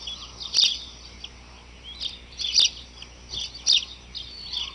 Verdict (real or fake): real